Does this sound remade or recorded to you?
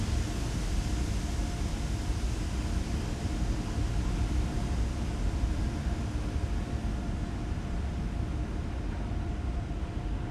recorded